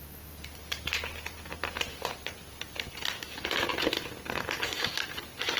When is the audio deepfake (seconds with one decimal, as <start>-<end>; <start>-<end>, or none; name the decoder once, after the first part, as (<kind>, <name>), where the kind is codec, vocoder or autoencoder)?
none